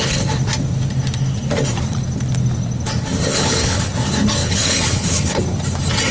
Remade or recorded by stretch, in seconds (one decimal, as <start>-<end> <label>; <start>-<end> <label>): 0.0-3.3 recorded; 3.3-3.9 remade; 3.9-4.4 recorded; 4.4-5.4 remade; 5.4-6.1 recorded